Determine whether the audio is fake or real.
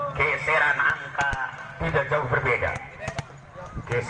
real